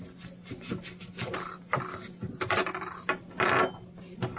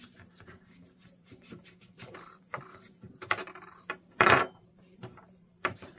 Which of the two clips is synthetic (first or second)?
second